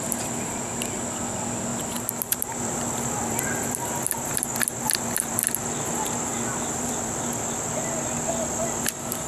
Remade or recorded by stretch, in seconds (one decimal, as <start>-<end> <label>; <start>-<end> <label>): 0.0-1.7 recorded; 1.7-5.4 remade; 5.4-6.3 recorded; 6.3-7.3 remade; 7.3-9.3 recorded